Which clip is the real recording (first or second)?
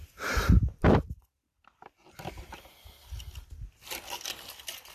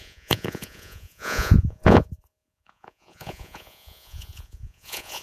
first